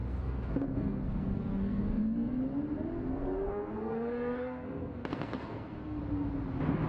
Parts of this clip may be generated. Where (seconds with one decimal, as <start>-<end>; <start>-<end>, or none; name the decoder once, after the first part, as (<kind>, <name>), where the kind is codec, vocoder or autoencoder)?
0.0-2.4 (codec, SNAC); 3.1-6.0